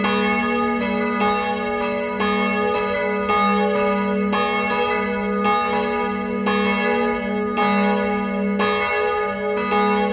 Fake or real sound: real